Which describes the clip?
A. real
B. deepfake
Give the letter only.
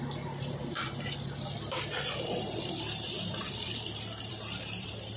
B